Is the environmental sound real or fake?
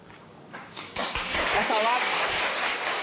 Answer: fake